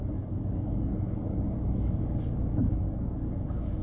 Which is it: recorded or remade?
remade